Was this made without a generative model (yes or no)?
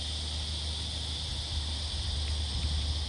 yes